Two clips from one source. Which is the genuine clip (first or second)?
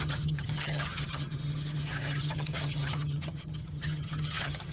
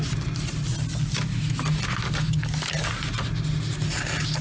second